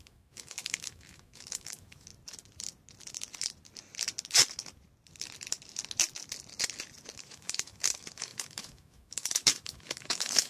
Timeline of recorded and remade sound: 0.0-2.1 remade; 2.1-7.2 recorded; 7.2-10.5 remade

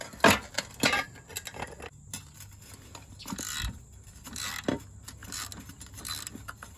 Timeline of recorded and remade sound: 0.0-6.8 recorded

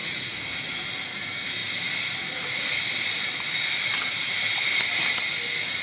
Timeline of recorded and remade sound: 0.0-5.8 recorded

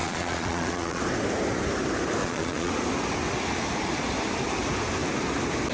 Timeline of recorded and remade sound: 0.0-1.0 remade; 1.0-2.2 recorded; 2.2-2.7 remade; 2.7-5.7 recorded

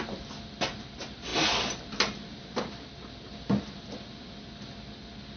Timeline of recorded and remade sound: 0.0-5.4 recorded

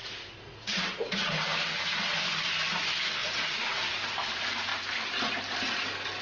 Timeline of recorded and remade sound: 0.0-1.3 remade; 1.3-3.2 recorded; 3.2-3.8 remade; 3.8-6.2 recorded